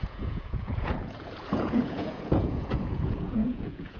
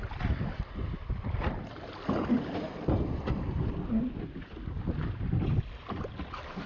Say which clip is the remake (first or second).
first